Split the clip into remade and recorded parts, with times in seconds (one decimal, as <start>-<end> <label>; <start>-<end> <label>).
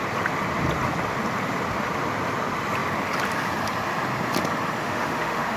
0.0-4.8 recorded; 4.8-5.6 remade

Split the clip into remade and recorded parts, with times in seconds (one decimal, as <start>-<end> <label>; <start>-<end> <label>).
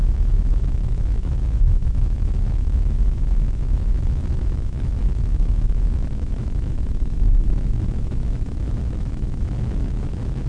0.0-10.5 remade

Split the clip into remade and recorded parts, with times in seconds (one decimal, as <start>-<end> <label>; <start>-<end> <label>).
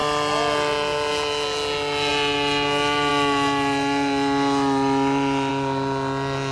0.0-6.5 recorded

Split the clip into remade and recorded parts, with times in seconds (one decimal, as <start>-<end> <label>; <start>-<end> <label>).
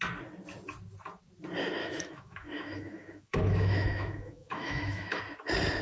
0.0-1.8 recorded; 1.8-5.2 remade; 5.2-5.8 recorded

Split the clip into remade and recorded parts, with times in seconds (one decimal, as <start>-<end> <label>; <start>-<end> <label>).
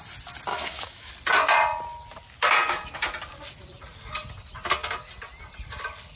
0.0-0.5 recorded; 0.5-1.1 remade; 1.1-6.2 recorded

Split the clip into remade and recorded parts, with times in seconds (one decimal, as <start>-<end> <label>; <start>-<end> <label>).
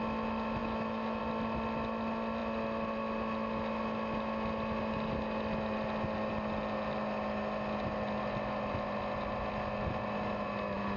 0.0-0.6 recorded; 0.6-1.2 remade; 1.2-11.0 recorded